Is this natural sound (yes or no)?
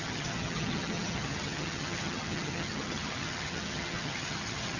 no